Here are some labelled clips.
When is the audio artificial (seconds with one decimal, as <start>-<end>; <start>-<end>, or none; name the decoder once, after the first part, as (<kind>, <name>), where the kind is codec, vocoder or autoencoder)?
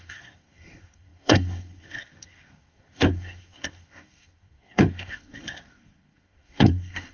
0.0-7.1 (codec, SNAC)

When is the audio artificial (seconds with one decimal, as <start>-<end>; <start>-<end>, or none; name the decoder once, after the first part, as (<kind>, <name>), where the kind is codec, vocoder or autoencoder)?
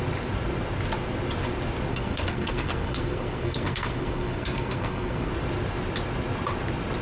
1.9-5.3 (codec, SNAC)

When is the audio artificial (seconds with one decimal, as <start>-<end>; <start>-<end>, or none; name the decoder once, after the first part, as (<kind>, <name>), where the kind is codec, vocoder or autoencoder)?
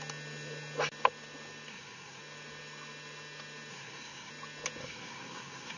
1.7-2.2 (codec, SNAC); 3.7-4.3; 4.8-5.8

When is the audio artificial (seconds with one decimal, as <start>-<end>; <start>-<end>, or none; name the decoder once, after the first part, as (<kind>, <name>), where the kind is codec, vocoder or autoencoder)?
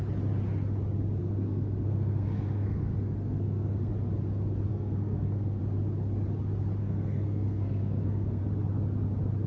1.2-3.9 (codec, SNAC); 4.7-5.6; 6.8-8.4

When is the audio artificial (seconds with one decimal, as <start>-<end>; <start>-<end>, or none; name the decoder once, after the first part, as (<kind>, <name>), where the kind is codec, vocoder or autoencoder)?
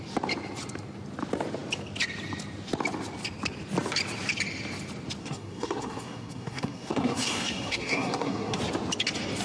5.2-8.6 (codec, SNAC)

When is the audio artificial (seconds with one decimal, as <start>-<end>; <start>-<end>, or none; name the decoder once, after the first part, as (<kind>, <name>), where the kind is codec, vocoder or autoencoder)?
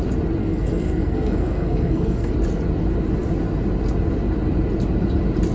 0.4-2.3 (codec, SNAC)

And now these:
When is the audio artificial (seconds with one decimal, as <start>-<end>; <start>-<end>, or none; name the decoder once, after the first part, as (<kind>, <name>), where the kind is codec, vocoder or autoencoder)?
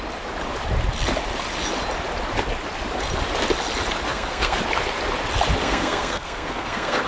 4.1-4.6 (codec, SNAC); 5.6-7.1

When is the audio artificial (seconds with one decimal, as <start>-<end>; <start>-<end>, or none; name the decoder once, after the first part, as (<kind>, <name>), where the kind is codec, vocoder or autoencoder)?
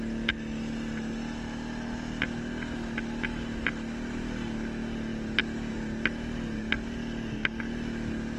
none